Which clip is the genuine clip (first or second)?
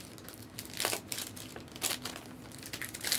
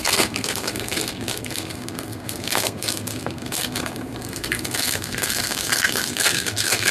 first